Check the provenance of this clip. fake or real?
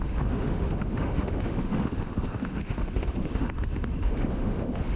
fake